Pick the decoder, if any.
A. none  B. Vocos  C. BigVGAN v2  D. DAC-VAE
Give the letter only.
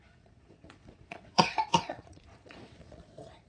B